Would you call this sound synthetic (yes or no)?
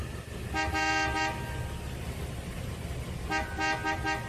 no